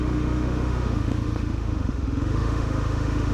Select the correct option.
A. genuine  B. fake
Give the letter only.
B